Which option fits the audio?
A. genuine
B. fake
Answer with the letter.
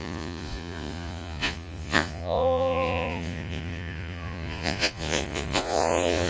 B